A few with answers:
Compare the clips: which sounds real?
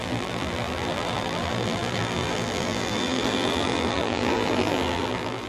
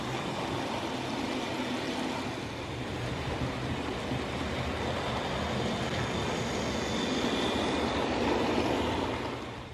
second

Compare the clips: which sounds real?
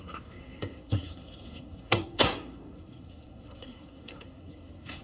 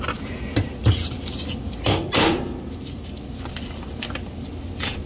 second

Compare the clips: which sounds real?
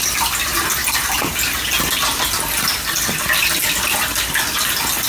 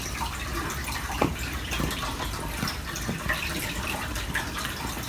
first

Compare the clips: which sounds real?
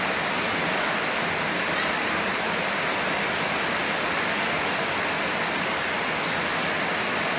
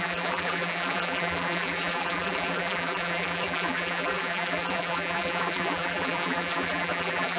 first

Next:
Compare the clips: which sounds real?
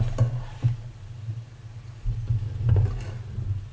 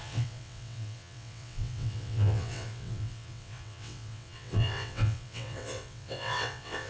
first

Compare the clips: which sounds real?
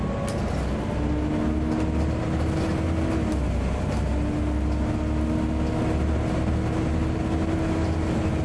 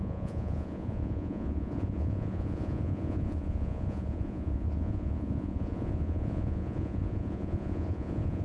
first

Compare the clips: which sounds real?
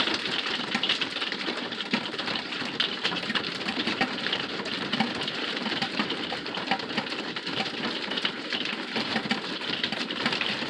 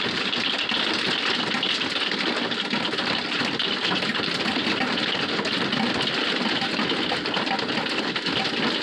second